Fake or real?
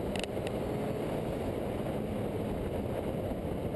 real